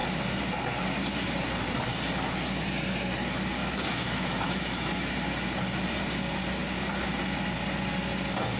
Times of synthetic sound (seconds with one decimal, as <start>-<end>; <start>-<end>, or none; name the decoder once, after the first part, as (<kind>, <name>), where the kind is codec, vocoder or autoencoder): 3.6-5.1 (autoencoder, DAC-VAE)

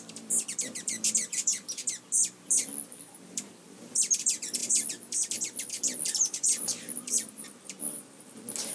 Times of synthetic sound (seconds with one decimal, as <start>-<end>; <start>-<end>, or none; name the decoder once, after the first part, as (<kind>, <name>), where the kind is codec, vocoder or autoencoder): 0.0-8.7 (vocoder, BigVGAN v2)

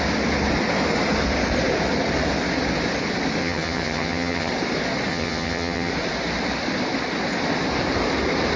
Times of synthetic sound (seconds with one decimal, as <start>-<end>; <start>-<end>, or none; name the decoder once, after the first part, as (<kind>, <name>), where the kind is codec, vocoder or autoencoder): 3.4-4.5 (vocoder, HiFi-GAN); 5.1-5.9

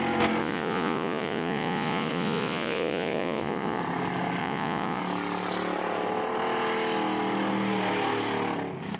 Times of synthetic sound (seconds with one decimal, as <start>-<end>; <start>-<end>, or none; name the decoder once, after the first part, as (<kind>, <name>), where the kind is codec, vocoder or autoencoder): 0.4-3.8 (vocoder, Vocos); 4.4-5.0

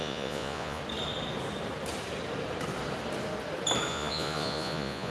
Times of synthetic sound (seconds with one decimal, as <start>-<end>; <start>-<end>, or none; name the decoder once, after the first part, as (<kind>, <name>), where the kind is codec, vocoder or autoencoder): 0.0-0.8 (vocoder, Vocos); 3.9-5.1

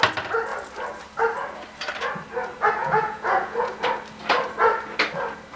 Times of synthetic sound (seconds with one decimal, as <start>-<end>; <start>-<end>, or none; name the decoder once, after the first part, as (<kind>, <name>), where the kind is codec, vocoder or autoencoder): 2.8-3.7 (vocoder, Vocos)

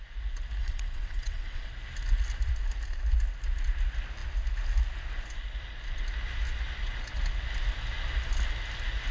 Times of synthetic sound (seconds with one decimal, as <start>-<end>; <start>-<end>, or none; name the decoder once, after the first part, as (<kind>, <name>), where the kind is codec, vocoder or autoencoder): 0.6-1.7 (vocoder, WaveNeXt)